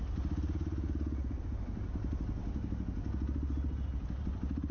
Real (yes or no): yes